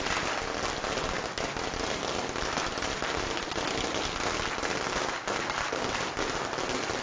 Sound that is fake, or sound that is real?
real